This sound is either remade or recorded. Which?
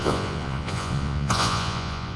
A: remade